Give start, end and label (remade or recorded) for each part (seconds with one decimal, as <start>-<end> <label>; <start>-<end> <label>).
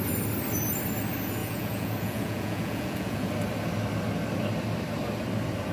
0.0-1.4 recorded; 1.4-3.3 remade; 3.3-5.7 recorded